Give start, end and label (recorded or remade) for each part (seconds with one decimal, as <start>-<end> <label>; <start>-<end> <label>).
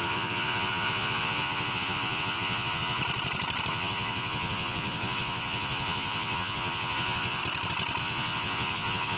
0.0-3.0 remade; 3.0-3.7 recorded; 3.7-7.4 remade; 7.4-8.0 recorded; 8.0-9.2 remade